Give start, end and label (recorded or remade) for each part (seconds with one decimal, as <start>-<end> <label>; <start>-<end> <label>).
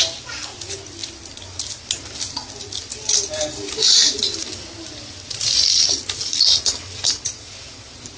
0.0-8.2 recorded